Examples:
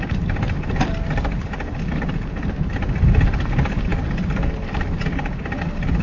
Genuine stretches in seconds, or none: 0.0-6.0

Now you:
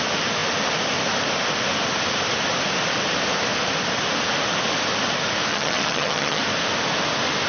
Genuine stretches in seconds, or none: 0.0-5.5; 6.4-7.5